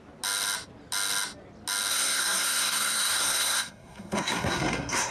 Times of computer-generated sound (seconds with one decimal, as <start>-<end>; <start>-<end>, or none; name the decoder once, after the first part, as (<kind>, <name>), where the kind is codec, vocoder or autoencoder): 1.9-5.1 (codec, SNAC)